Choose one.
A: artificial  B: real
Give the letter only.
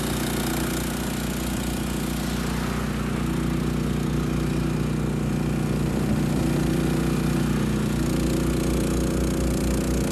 B